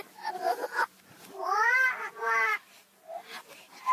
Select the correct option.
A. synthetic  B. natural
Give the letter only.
B